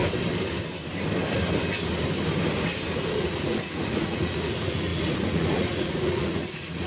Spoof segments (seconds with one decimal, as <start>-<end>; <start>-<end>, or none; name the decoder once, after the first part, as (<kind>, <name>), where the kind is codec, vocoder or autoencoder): 3.2-6.9 (vocoder, Vocos)